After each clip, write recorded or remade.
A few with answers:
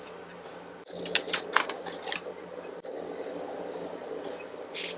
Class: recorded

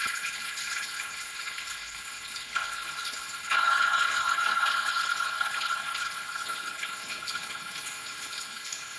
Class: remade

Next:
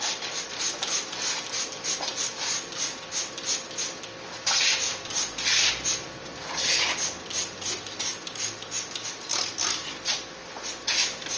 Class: recorded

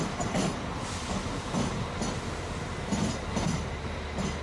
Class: recorded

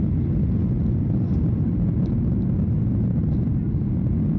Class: recorded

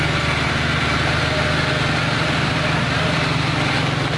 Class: recorded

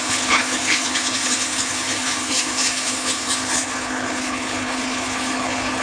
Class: remade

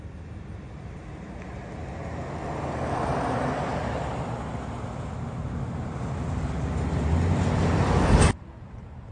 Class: recorded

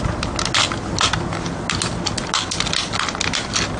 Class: recorded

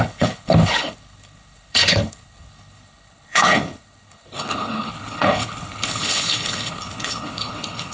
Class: remade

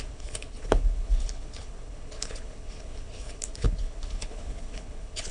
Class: remade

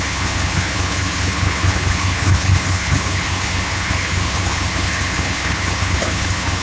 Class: remade